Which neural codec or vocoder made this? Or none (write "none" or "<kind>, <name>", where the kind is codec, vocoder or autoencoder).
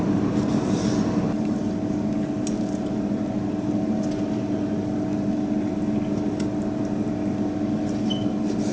none